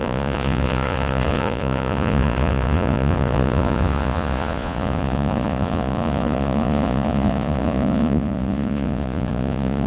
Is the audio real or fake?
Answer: fake